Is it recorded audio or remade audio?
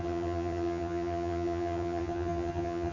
remade